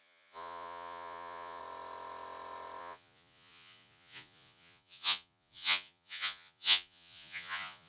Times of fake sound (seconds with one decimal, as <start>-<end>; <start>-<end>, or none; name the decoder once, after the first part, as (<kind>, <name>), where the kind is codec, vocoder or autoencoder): 0.0-1.6 (vocoder, Vocos); 2.8-7.9